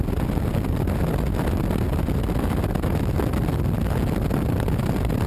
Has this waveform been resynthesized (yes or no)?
no